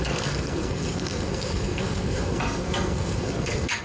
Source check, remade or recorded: remade